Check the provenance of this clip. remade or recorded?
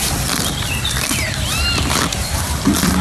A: recorded